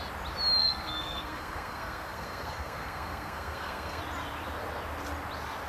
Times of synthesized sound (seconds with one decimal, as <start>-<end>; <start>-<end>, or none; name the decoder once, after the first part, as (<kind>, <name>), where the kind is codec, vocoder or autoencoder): 0.6-4.0 (codec, SNAC)